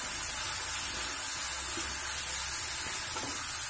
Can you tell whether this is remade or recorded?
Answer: recorded